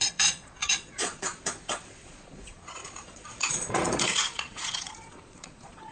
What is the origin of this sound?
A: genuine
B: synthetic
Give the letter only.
B